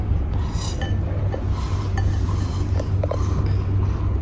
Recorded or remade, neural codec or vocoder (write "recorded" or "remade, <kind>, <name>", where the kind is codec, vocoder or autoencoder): recorded